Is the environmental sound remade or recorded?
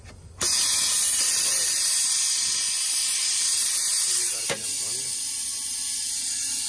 recorded